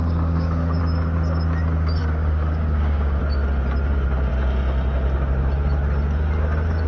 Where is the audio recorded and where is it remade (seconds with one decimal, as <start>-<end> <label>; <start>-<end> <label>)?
0.0-0.8 remade; 0.8-2.0 recorded; 2.0-3.2 remade; 3.2-6.9 recorded